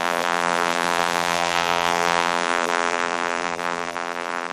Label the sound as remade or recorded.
remade